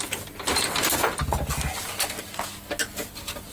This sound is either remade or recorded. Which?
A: recorded